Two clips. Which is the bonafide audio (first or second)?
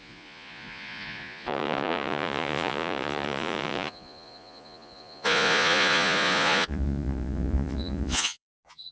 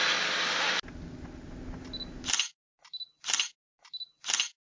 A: second